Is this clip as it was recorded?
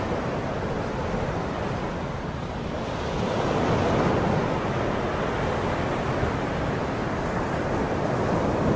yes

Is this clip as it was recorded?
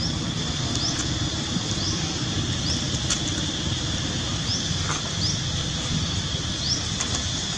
yes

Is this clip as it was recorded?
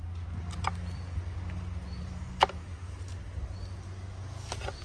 yes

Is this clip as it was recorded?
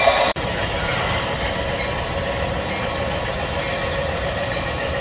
no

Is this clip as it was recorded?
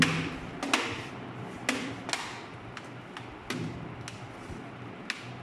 yes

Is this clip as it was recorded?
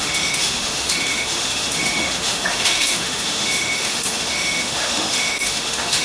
no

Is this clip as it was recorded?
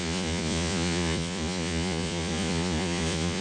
no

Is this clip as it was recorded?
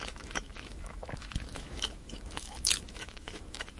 no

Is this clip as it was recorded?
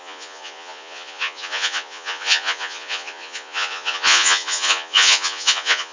no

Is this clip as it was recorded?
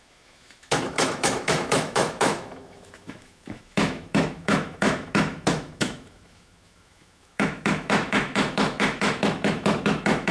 no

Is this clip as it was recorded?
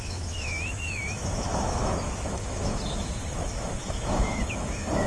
no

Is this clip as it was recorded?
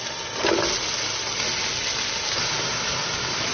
yes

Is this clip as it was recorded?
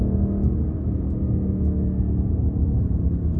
yes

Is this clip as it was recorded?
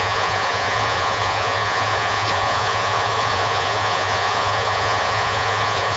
no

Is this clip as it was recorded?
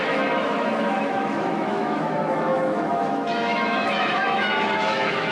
no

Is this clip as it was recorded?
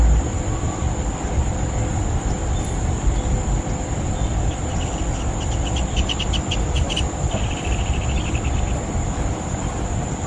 yes